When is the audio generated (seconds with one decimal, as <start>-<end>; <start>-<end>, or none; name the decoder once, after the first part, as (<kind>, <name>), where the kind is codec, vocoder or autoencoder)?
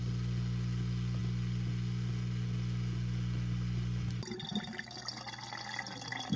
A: none